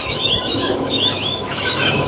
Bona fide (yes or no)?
no